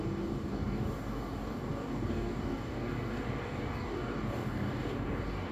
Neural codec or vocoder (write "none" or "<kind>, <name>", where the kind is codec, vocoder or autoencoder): codec, DAC